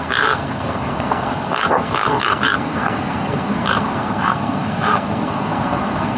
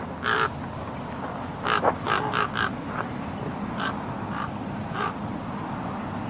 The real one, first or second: second